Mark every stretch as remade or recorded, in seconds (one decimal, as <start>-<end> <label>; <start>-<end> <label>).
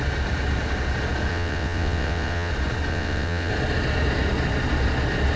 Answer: 0.0-1.3 recorded; 1.3-2.5 remade; 2.5-2.9 recorded; 2.9-3.5 remade; 3.5-5.4 recorded